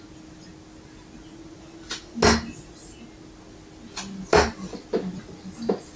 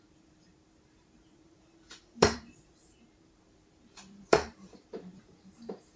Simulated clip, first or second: second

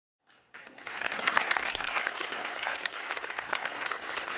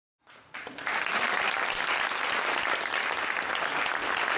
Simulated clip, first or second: first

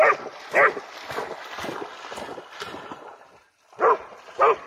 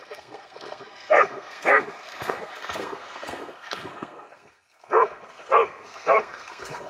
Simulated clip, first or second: second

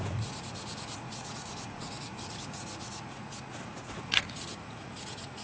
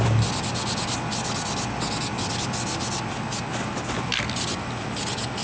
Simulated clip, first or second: first